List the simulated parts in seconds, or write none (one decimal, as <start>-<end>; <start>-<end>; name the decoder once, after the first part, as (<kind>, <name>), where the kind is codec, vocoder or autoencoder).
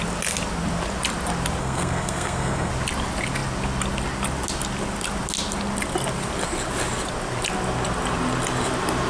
1.6-2.7 (codec, SNAC)